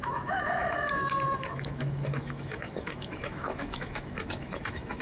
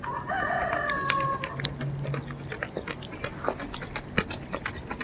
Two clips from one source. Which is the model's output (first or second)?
first